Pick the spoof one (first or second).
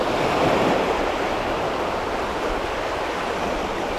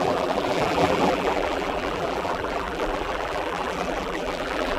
second